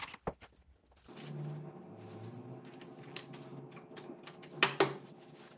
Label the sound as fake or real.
real